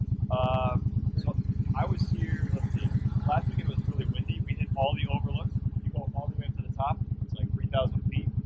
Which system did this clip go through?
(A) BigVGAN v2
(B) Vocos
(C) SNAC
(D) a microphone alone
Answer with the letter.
D